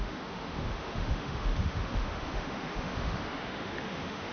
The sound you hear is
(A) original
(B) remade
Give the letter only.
B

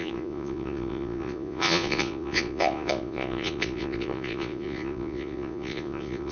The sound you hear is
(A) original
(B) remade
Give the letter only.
B